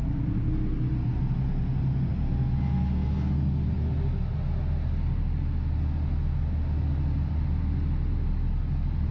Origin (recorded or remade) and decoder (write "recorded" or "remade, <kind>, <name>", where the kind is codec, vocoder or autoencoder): recorded